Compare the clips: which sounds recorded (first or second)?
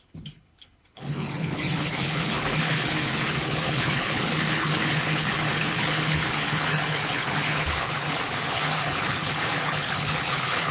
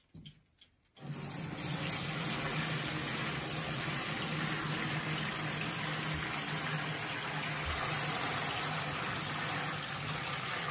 second